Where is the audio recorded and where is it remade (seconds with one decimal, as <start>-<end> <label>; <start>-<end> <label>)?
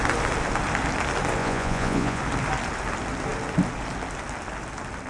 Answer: 0.0-1.4 recorded; 1.4-2.2 remade; 2.2-5.1 recorded